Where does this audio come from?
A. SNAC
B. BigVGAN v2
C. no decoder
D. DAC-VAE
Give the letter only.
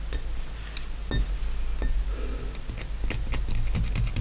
C